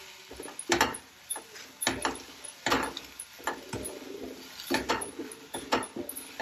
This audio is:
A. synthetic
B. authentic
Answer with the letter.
B